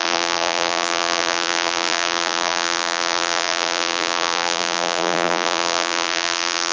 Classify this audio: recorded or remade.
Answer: remade